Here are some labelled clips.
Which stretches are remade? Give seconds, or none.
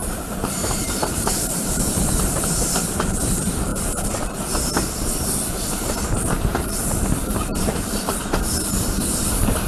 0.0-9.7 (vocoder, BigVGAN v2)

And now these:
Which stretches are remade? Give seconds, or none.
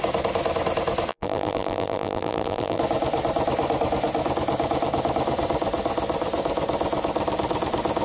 1.1-2.8 (vocoder, BigVGAN v2)